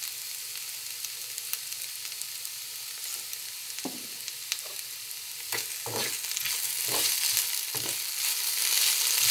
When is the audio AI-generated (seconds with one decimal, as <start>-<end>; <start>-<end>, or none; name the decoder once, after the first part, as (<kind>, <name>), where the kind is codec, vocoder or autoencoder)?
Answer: none